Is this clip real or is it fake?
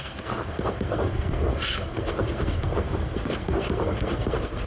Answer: fake